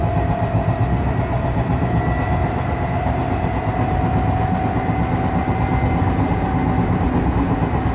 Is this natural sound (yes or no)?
yes